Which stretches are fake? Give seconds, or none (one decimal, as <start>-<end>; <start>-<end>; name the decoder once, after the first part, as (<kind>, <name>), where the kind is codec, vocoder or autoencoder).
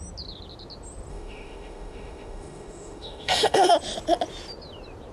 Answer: 1.1-3.7 (autoencoder, DAC-VAE)